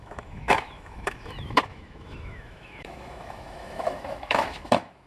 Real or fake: fake